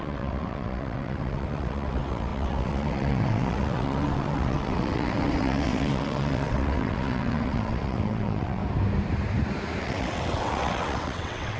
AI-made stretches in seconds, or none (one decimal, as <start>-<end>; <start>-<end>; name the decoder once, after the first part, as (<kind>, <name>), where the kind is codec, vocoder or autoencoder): 0.0-8.6 (vocoder, WaveNeXt); 9.8-11.6